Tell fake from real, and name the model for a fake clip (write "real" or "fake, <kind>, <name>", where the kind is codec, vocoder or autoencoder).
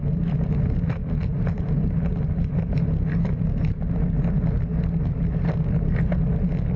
real